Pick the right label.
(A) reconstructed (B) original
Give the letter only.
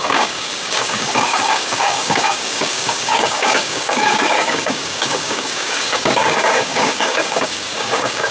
A